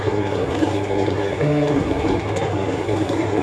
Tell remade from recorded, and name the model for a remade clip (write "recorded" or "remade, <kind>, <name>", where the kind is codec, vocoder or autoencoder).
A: remade, codec, SNAC